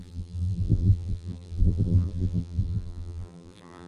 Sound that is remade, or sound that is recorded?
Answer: remade